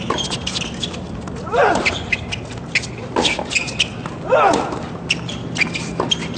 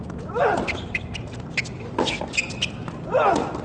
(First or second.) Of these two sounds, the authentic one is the first